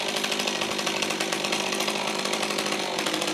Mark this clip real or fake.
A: real